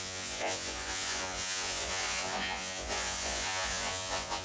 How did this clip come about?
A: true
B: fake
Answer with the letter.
B